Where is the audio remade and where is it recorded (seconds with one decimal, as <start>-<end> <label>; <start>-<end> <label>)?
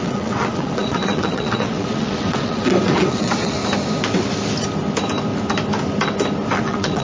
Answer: 0.0-3.6 remade; 3.6-6.5 recorded; 6.5-7.0 remade